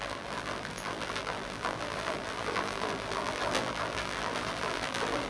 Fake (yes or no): yes